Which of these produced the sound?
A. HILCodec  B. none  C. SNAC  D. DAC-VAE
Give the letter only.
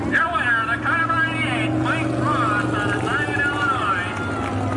B